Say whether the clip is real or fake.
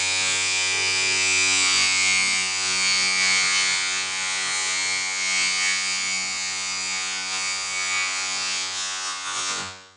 fake